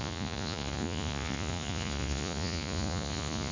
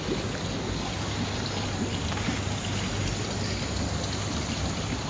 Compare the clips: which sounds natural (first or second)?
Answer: second